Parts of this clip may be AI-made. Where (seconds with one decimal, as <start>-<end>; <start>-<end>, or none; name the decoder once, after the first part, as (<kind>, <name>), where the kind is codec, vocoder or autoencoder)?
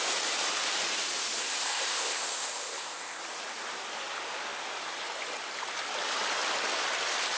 1.4-3.2 (codec, ZipCodec)